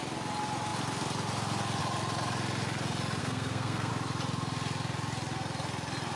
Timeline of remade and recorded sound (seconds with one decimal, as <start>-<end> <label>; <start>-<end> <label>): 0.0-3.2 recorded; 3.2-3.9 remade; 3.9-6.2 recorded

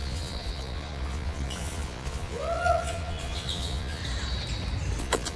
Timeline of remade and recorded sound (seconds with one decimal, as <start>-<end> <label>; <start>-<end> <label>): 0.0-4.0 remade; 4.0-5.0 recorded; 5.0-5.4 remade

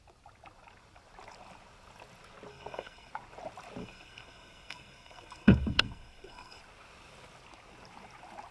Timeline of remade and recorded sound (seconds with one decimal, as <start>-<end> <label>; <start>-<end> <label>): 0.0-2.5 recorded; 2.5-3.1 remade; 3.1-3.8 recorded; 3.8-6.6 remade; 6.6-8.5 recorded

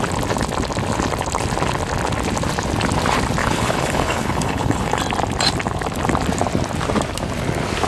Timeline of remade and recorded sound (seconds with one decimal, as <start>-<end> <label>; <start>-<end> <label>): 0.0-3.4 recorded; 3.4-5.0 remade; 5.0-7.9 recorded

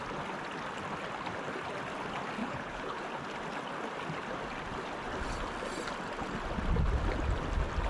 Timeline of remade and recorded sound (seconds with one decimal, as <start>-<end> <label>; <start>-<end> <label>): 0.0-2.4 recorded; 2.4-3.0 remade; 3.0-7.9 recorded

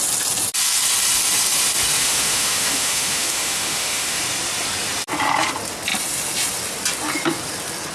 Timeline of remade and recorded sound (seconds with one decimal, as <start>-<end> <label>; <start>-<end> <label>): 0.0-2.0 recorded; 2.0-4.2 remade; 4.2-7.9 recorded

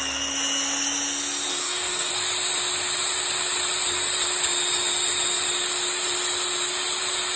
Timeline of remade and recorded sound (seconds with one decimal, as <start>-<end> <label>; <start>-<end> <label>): 0.0-1.5 recorded; 1.5-2.1 remade; 2.1-7.4 recorded